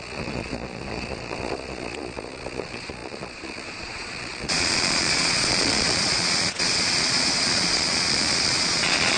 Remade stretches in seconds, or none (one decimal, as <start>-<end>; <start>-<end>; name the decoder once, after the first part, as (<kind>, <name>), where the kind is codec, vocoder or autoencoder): 0.0-9.2 (vocoder, Vocos)